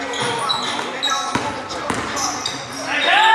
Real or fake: real